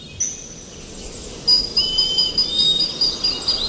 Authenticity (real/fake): real